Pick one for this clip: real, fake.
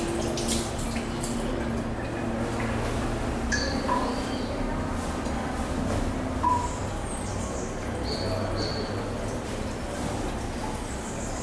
real